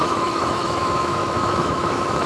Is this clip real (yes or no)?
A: no